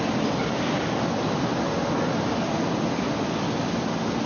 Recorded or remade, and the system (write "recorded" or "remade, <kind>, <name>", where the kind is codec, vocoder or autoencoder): recorded